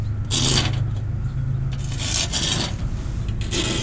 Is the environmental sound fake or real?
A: real